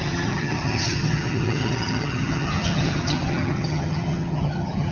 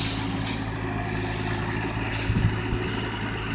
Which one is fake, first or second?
first